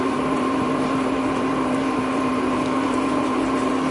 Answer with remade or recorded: remade